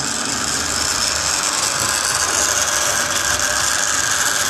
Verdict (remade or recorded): recorded